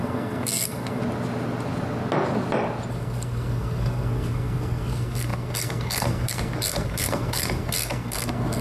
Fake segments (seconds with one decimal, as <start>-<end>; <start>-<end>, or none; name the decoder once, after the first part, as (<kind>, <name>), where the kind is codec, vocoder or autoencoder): 0.0-1.0 (codec, SNAC); 2.9-8.6